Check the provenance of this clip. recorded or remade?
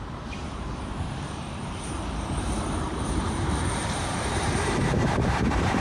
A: remade